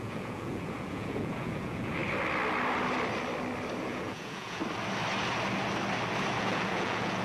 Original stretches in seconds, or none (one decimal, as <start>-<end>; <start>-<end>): 2.0-3.8; 4.6-6.4